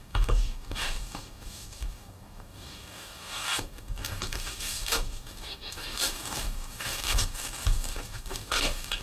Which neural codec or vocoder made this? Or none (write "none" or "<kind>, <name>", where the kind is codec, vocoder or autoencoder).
codec, DAC